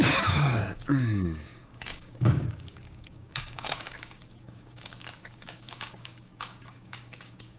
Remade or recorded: remade